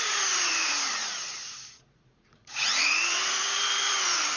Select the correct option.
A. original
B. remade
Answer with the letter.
B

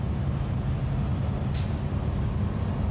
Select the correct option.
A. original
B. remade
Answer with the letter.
A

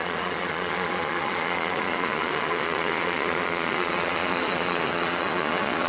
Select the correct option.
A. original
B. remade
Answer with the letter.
B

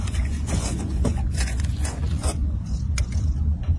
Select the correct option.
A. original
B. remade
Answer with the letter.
B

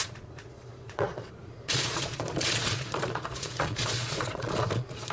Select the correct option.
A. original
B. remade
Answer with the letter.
B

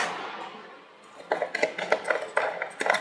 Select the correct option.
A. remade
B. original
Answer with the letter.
B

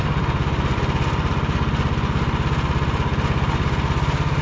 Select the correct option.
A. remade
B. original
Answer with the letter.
B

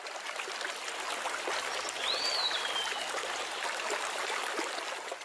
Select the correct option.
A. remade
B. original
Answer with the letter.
B